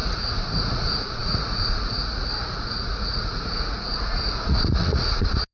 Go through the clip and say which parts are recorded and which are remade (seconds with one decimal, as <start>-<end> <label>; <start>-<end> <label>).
0.0-5.5 remade